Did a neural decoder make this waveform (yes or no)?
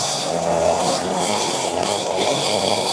yes